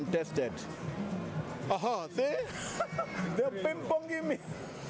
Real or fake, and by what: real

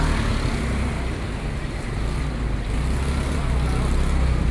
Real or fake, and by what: real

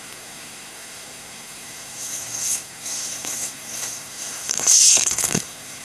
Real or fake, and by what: fake, codec, SNAC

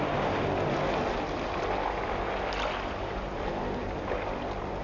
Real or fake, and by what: real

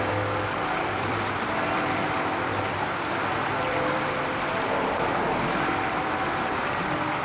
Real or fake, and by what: fake, vocoder, BigVGAN v2